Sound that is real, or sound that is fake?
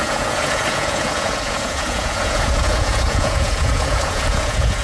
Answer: fake